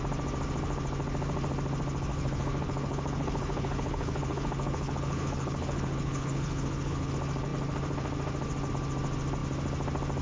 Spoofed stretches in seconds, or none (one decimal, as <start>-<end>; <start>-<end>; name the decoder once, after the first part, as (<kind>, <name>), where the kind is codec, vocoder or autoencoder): 2.1-7.1 (codec, HILCodec)